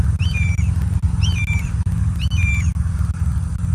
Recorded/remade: recorded